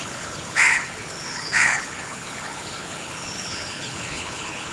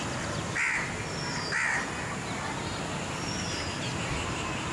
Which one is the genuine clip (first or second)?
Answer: second